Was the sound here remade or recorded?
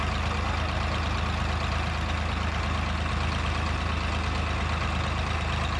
recorded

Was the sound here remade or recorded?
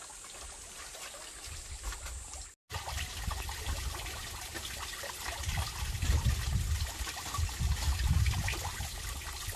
recorded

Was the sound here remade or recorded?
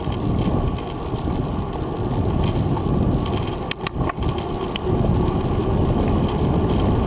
recorded